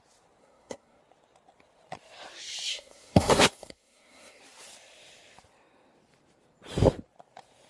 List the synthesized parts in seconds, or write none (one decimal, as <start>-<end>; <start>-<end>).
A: 0.4-1.0; 2.7-4.4